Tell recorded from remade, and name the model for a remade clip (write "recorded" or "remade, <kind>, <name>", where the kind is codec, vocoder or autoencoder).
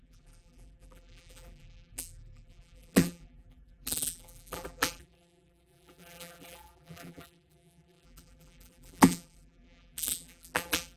remade, vocoder, BigVGAN v2